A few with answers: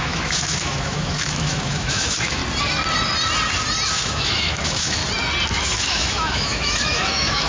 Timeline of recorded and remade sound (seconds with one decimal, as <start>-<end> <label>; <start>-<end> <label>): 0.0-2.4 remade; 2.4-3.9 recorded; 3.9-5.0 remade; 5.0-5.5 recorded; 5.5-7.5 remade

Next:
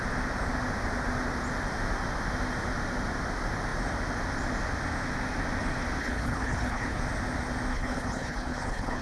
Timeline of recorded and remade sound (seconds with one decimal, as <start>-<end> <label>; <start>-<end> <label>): 0.0-6.0 recorded; 6.0-7.0 remade; 7.0-7.7 recorded; 7.7-9.0 remade

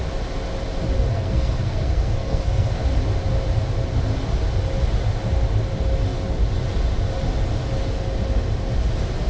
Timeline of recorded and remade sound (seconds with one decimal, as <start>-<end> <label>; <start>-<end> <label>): 0.0-1.1 recorded; 1.1-2.8 remade; 2.8-9.3 recorded

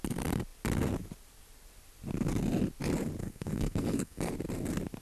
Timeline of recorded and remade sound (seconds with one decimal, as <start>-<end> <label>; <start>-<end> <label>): 0.0-3.2 recorded; 3.2-4.3 remade; 4.3-5.0 recorded

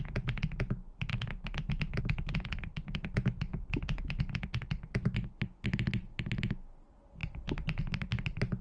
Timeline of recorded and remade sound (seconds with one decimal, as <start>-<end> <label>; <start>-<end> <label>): 0.0-8.6 recorded